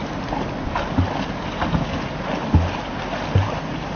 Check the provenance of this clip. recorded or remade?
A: recorded